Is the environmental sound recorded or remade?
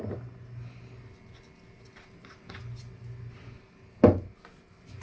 recorded